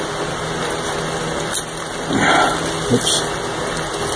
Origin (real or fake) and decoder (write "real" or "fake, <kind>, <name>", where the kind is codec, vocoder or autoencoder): real